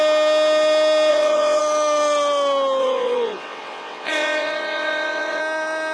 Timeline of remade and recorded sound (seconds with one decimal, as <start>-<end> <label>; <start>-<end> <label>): 0.0-1.1 recorded; 1.1-1.6 remade; 1.6-2.8 recorded; 2.8-5.4 remade; 5.4-5.9 recorded